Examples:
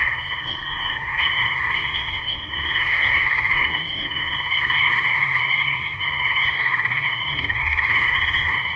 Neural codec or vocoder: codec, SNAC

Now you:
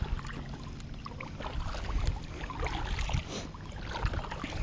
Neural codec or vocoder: none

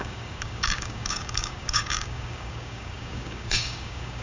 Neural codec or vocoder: codec, DAC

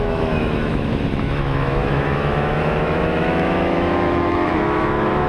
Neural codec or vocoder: autoencoder, DAC-VAE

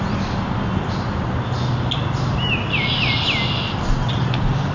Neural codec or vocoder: none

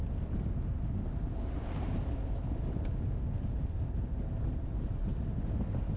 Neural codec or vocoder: none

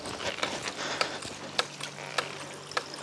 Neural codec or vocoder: none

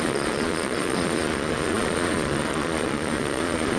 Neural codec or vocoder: vocoder, Vocos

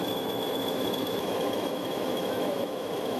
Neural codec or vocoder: autoencoder, DAC-VAE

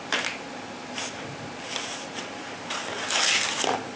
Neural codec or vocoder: none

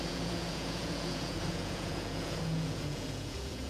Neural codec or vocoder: vocoder, Vocos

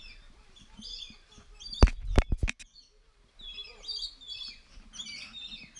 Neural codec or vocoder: none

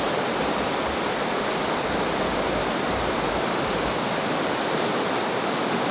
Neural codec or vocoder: none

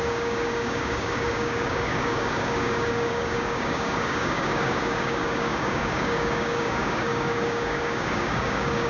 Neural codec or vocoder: codec, DAC